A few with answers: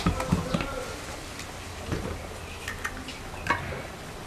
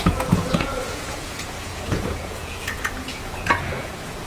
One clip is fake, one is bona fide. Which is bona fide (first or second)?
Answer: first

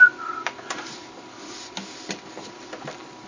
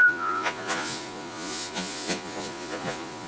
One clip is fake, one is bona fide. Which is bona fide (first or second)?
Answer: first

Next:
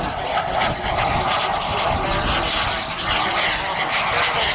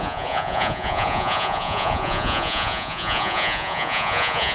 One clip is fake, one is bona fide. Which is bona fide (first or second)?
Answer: first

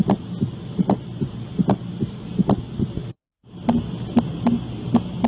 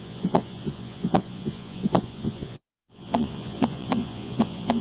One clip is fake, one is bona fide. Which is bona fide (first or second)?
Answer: first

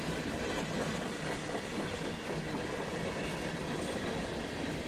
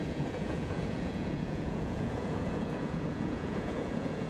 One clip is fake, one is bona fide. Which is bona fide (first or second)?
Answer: first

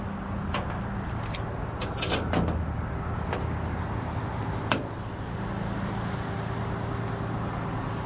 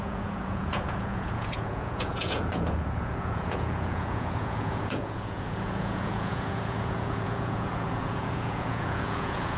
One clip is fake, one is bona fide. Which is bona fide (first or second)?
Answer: first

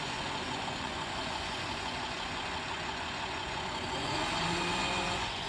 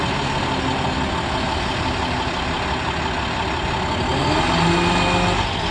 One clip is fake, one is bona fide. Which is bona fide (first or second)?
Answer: second